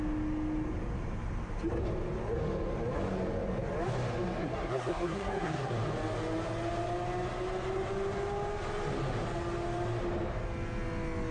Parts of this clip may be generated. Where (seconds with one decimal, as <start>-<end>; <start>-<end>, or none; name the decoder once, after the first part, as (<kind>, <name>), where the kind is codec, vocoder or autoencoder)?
4.4-5.7 (codec, SNAC)